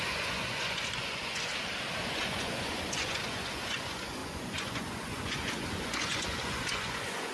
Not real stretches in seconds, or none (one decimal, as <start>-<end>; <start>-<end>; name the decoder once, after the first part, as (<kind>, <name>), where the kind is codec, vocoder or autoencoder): 0.0-1.5 (vocoder, Vocos); 2.0-7.3